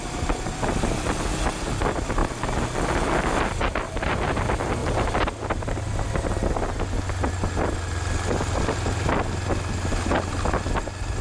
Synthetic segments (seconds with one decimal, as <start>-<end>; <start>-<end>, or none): none